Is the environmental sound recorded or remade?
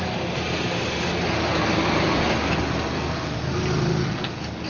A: recorded